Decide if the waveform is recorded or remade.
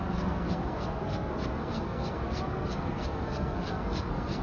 remade